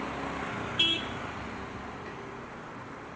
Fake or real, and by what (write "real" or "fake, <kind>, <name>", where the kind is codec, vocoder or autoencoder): real